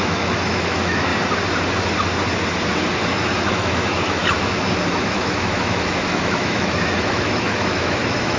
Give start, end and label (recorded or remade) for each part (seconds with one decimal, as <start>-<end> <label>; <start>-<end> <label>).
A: 0.0-1.1 remade; 1.1-3.5 recorded; 3.5-4.2 remade; 4.2-4.9 recorded; 4.9-8.4 remade